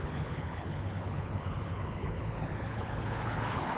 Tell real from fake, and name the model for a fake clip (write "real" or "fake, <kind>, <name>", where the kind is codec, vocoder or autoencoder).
fake, codec, HILCodec